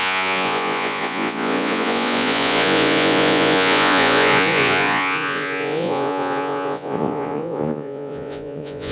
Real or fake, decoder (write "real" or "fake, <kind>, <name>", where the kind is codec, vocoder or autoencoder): fake, vocoder, Vocos